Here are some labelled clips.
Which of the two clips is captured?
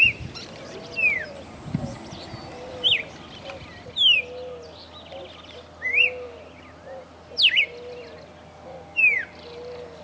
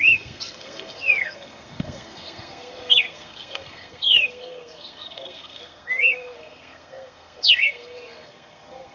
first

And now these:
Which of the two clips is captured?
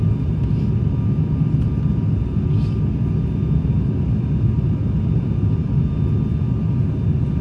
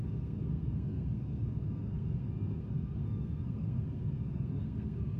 first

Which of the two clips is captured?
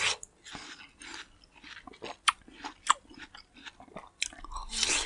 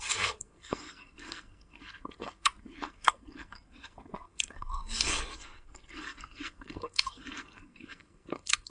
first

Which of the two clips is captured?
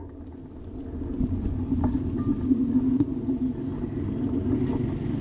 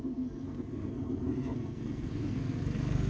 first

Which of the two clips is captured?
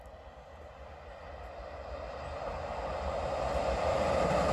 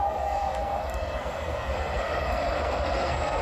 first